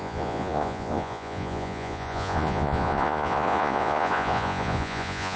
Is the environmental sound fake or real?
fake